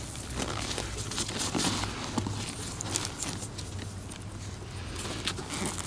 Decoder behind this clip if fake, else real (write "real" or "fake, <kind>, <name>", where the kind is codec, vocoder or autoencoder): real